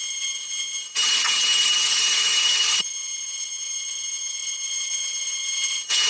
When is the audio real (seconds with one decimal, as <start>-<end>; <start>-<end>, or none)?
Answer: none